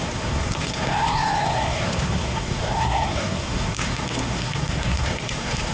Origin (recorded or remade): remade